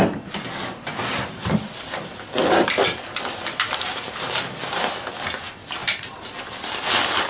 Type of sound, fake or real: real